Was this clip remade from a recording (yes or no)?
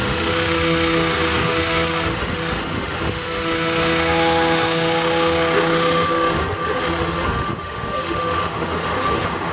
yes